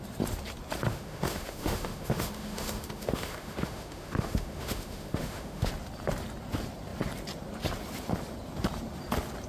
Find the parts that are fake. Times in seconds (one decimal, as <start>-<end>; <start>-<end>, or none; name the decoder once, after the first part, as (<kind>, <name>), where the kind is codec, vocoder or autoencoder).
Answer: 0.9-5.7 (autoencoder, DAC-VAE)